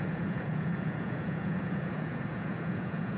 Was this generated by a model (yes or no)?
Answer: yes